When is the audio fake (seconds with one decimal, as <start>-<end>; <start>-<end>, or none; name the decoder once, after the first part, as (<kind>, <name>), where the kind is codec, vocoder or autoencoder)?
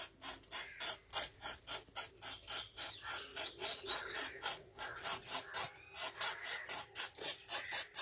1.1-1.6 (vocoder, Vocos); 3.3-5.2